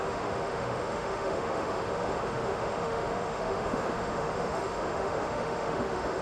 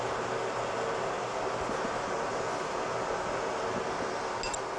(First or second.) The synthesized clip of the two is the first